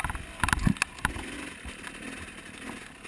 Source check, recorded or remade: recorded